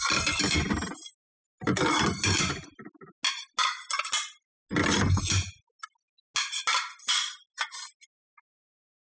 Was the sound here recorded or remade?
recorded